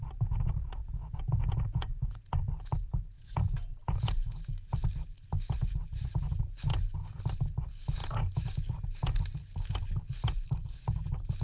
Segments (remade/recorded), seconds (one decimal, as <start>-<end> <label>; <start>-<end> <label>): 0.0-0.8 recorded; 0.8-4.7 remade; 4.7-11.4 recorded